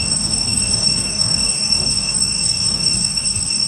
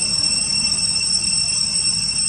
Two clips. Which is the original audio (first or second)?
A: second